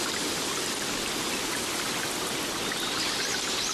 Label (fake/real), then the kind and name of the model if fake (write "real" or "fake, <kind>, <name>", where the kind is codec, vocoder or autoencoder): real